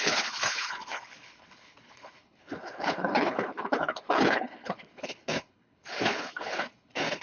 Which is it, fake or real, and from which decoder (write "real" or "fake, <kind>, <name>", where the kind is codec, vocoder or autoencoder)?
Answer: fake, codec, HILCodec